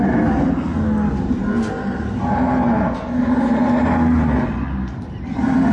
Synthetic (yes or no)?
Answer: no